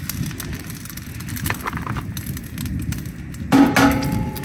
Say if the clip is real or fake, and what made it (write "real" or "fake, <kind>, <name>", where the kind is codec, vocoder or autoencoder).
real